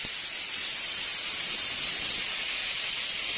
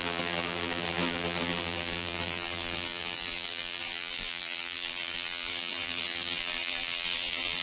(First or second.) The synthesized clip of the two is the second